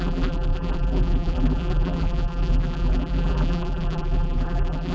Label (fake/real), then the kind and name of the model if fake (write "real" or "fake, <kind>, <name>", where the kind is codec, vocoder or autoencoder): fake, vocoder, BigVGAN v2